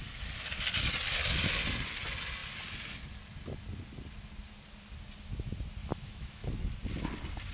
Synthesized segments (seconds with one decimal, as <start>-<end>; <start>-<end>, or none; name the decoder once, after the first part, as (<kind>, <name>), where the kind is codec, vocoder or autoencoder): 5.8-6.5 (autoencoder, DAC-VAE)